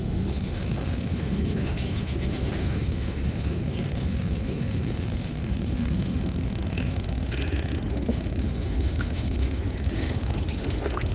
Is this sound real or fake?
fake